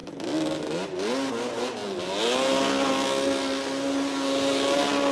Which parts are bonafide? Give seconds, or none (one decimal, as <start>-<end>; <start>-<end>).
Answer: 1.3-5.1